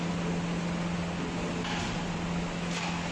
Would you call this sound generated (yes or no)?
no